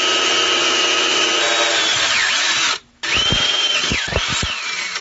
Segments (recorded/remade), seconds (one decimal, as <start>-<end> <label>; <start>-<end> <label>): 0.0-0.6 recorded; 0.6-1.3 remade; 1.3-5.0 recorded